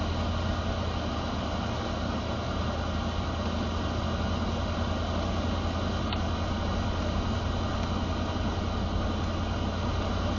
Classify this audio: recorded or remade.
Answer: recorded